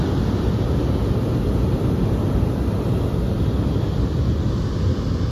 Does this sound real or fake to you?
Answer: real